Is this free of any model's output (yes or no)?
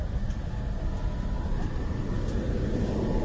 yes